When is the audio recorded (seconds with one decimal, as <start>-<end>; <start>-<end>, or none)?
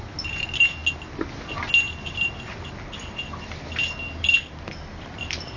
0.0-5.6